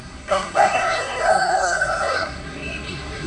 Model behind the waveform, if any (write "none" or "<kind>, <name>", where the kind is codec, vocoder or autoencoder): codec, SNAC